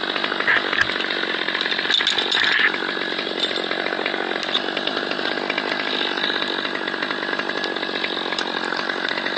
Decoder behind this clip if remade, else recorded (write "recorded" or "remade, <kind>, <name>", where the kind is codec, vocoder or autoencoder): recorded